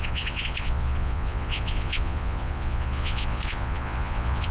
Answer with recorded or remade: remade